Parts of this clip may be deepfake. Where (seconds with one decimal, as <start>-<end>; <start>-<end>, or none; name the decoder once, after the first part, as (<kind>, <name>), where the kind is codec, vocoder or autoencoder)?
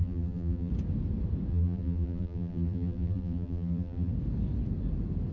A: 0.0-0.7 (vocoder, BigVGAN v2); 1.5-4.1